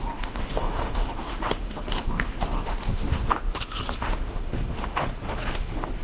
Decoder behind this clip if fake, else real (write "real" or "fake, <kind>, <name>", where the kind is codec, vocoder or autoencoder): fake, autoencoder, DAC-VAE